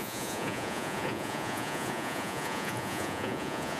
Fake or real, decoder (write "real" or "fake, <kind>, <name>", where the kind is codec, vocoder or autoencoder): fake, vocoder, Vocos